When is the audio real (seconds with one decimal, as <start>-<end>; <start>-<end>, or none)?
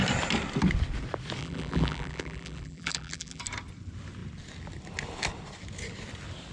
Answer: 0.0-1.4; 3.4-6.5